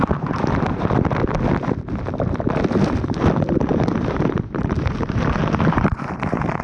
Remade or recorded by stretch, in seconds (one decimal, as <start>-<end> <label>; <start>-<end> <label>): 0.0-1.2 remade; 1.2-3.0 recorded; 3.0-6.6 remade